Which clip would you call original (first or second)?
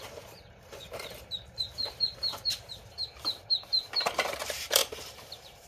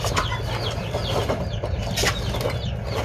second